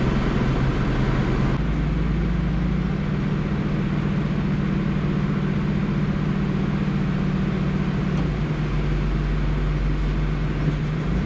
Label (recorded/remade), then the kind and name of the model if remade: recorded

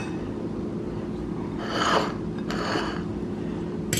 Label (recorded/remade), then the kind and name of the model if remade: recorded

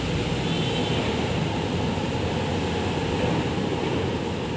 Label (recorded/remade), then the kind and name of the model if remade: recorded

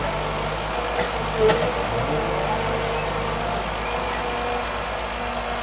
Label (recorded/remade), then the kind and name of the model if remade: recorded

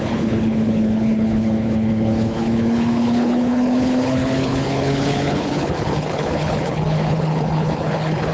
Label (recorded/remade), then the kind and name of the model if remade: remade, codec, HILCodec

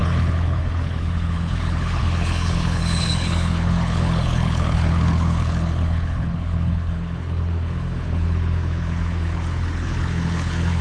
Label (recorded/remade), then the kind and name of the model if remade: remade, codec, HILCodec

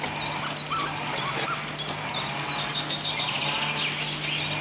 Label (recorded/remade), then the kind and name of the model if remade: recorded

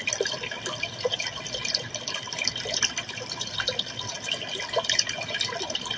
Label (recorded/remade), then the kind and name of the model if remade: recorded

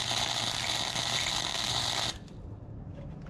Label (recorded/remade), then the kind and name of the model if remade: recorded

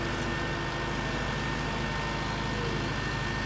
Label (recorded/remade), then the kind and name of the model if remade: recorded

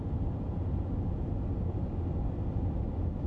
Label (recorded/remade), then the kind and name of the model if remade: recorded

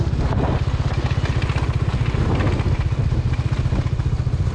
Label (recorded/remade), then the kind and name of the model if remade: recorded